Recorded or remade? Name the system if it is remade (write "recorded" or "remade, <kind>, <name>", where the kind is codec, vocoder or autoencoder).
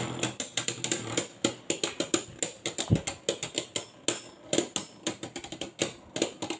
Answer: recorded